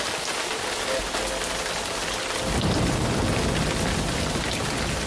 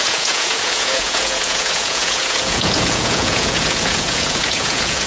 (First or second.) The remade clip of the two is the second